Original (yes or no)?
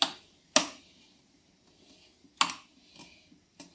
yes